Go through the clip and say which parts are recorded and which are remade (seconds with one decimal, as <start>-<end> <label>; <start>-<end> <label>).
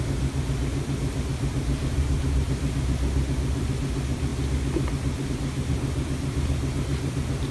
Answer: 0.0-1.9 recorded; 1.9-2.7 remade; 2.7-7.5 recorded